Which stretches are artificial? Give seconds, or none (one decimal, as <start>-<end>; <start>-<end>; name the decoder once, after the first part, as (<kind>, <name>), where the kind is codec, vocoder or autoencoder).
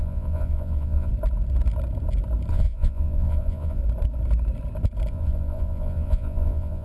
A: 0.0-1.1 (vocoder, Vocos); 2.5-3.8; 5.1-6.8